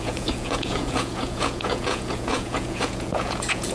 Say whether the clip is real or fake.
fake